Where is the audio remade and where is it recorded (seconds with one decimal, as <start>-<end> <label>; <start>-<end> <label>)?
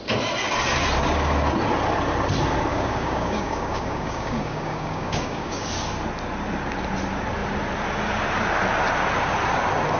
0.0-2.7 recorded; 2.7-5.7 remade; 5.7-10.0 recorded